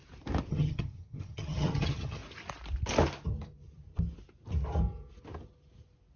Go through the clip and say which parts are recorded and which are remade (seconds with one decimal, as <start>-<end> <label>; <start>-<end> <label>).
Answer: 0.0-0.5 recorded; 0.5-2.2 remade; 2.2-6.2 recorded